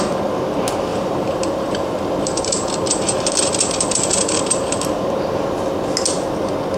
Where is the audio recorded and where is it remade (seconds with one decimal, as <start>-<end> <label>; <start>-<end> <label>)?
0.0-0.9 recorded; 0.9-5.0 remade; 5.0-6.8 recorded